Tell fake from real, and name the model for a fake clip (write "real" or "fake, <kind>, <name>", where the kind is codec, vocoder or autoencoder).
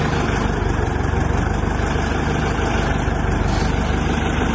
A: real